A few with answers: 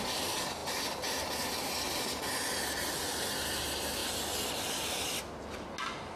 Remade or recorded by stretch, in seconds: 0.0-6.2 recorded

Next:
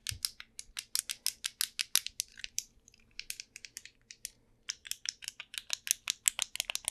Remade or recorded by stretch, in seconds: 0.0-2.3 recorded; 2.3-3.3 remade; 3.3-4.8 recorded; 4.8-5.4 remade; 5.4-6.9 recorded

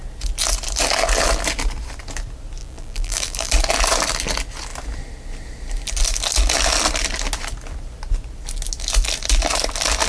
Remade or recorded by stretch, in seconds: 0.0-2.6 recorded; 2.6-3.5 remade; 3.5-10.1 recorded

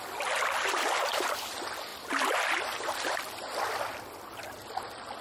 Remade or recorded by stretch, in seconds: 0.0-5.2 recorded

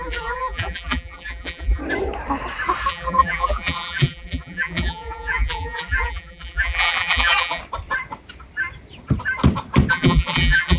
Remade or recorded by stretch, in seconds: 0.0-1.8 remade; 1.8-2.9 recorded; 2.9-7.6 remade; 7.6-9.9 recorded; 9.9-10.8 remade